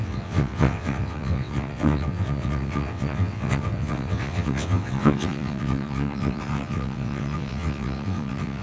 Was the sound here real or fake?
fake